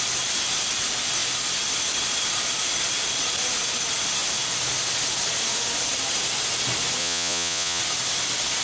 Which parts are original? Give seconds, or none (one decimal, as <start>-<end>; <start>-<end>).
0.0-7.0; 7.8-8.6